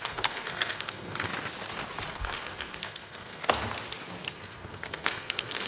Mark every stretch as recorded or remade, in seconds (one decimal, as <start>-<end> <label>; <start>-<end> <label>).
0.0-1.3 remade; 1.3-2.1 recorded; 2.1-3.4 remade; 3.4-4.3 recorded; 4.3-5.7 remade